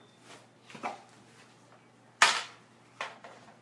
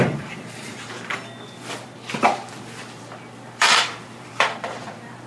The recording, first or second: first